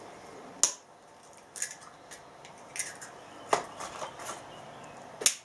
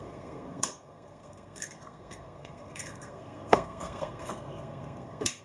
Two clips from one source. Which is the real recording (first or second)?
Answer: first